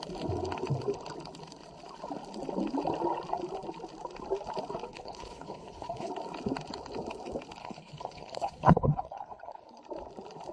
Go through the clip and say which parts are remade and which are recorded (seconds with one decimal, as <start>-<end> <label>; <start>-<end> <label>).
0.0-4.9 recorded; 4.9-6.1 remade; 6.1-7.6 recorded; 7.6-9.8 remade; 9.8-10.5 recorded